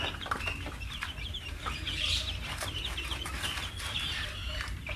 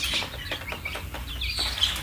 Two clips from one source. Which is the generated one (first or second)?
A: first